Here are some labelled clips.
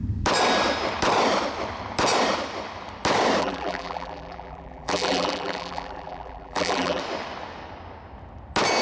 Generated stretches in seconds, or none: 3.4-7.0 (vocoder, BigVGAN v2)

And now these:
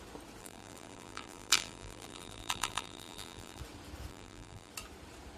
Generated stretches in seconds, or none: 0.4-3.6 (vocoder, BigVGAN v2); 4.1-4.7

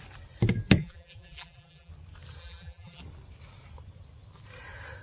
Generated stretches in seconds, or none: 0.8-1.9 (vocoder, BigVGAN v2); 2.4-3.0

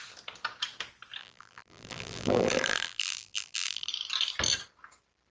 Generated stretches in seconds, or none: 1.2-3.9 (vocoder, BigVGAN v2)

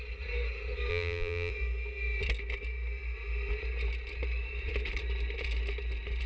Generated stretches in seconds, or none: 0.9-1.5 (vocoder, BigVGAN v2)